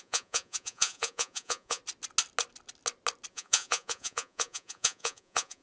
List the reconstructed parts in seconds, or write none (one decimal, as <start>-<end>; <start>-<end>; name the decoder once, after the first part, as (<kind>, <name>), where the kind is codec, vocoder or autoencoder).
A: 0.0-1.8 (vocoder, Vocos); 3.3-5.6